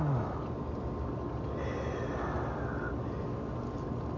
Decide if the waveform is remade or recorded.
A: recorded